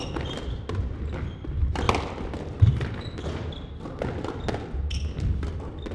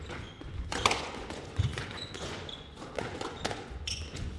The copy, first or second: second